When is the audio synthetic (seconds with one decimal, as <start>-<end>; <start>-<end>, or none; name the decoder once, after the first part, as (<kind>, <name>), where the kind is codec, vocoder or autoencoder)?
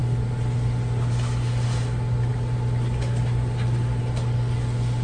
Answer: none